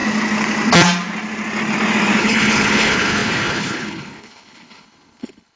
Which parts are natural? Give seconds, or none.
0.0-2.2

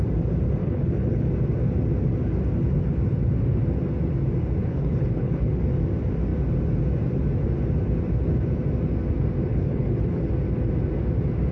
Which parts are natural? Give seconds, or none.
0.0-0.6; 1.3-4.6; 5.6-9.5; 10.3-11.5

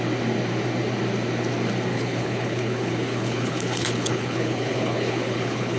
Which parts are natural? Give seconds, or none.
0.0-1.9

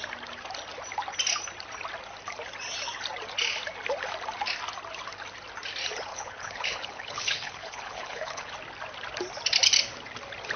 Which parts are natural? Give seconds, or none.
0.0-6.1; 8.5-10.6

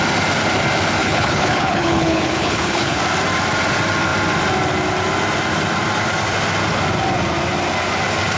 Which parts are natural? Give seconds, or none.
0.0-1.0; 3.0-8.4